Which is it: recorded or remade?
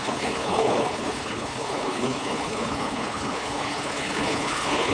remade